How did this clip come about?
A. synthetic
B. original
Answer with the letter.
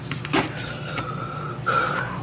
B